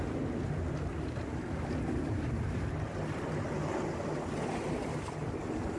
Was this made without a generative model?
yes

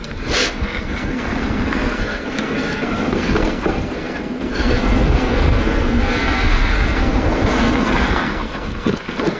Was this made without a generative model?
no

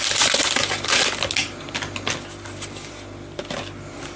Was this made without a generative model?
yes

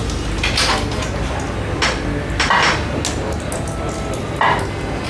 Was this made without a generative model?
yes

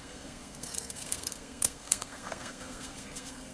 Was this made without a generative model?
no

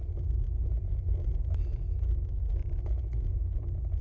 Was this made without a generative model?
yes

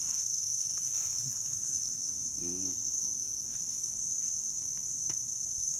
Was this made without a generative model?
no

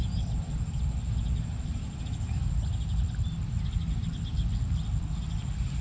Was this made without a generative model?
yes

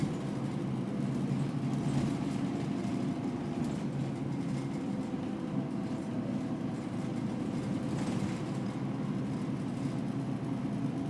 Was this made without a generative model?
yes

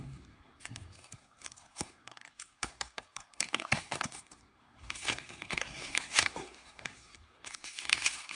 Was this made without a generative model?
no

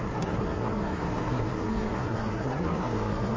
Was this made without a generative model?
no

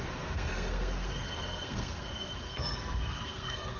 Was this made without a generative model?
no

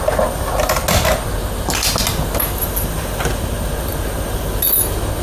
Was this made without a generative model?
yes